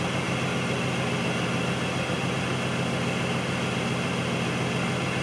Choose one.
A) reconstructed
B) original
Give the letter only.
B